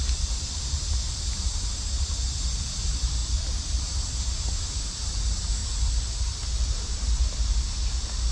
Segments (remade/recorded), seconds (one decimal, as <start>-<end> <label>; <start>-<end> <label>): 0.0-8.3 recorded